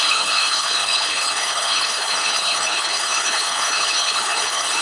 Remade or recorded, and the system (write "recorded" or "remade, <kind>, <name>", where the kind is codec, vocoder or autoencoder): remade, codec, HILCodec